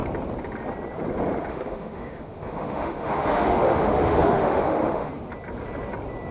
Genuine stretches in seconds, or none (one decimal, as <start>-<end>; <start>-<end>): 0.0-1.5; 5.1-6.3